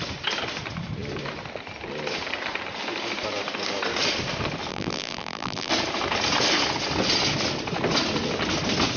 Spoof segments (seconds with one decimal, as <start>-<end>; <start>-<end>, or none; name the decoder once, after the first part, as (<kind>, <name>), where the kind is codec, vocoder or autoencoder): 4.7-5.7 (vocoder, BigVGAN v2)